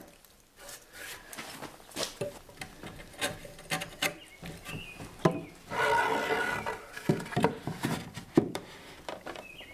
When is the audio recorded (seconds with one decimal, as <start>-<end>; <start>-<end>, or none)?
3.4-6.8